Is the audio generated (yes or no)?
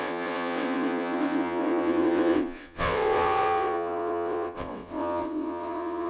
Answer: yes